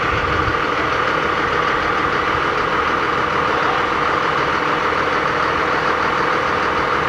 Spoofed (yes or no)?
no